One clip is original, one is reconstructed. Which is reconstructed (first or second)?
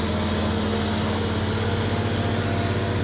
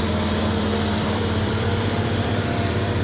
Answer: second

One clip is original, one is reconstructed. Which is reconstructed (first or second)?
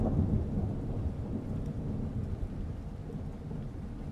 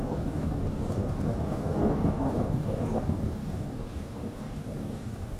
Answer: second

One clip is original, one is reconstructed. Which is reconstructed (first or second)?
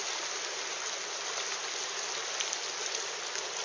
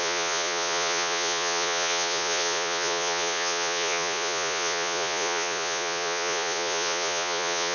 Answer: second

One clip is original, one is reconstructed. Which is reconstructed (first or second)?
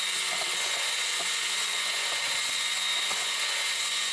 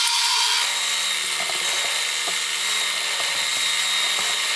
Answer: first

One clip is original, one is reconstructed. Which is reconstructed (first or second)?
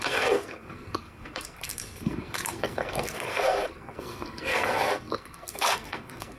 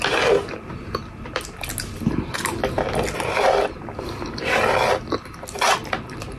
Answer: first